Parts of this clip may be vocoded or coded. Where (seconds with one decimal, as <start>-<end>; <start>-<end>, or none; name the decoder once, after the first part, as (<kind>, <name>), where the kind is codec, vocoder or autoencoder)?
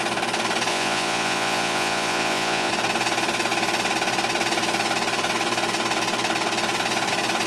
0.7-2.7 (vocoder, Vocos)